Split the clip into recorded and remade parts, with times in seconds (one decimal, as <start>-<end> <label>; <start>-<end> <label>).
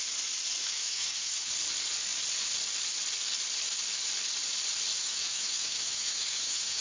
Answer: 0.0-0.6 recorded; 0.6-1.5 remade; 1.5-4.9 recorded; 4.9-6.8 remade